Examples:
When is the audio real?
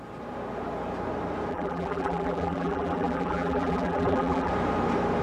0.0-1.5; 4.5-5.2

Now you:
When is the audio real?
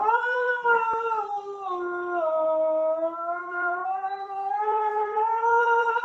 0.5-3.4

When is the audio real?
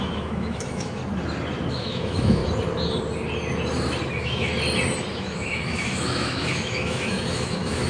1.0-1.7; 2.4-4.1; 4.5-5.1